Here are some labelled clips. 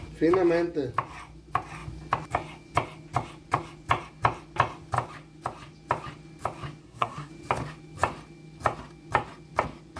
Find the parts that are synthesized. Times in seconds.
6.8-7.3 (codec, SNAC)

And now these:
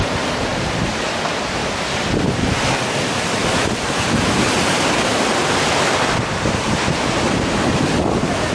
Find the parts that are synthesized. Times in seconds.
0.5-1.2 (vocoder, BigVGAN v2); 1.6-3.0

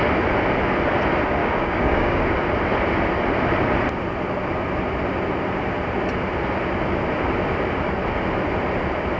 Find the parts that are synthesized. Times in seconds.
1.4-2.2 (codec, DAC)